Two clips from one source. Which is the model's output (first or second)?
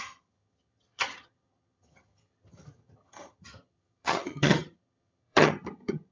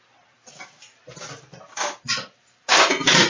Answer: first